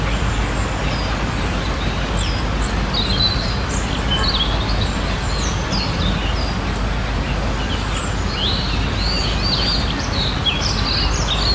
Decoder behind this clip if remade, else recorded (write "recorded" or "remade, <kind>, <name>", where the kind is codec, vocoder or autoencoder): recorded